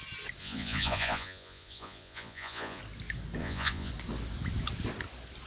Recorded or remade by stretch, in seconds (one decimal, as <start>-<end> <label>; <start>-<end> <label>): 0.0-0.4 recorded; 0.4-2.8 remade; 2.8-3.4 recorded; 3.4-3.9 remade; 3.9-5.5 recorded